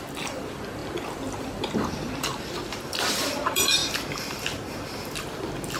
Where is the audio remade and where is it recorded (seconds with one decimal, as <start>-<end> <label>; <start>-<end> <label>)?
0.0-3.8 remade; 3.8-5.8 recorded